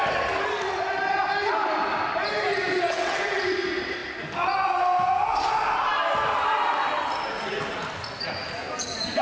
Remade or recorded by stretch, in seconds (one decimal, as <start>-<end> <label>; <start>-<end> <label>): 0.0-2.8 recorded; 2.8-3.4 remade; 3.4-9.2 recorded